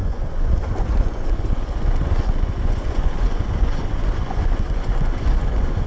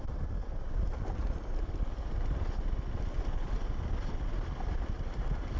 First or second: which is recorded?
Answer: second